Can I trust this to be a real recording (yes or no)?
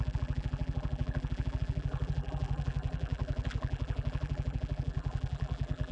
no